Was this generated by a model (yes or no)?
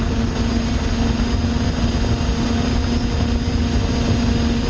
no